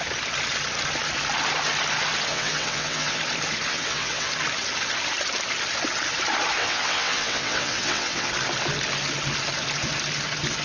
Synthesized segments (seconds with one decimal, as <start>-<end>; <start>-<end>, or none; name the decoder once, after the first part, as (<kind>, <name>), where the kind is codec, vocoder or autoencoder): 2.3-3.2 (vocoder, WaveNeXt); 3.7-4.3; 6.6-8.3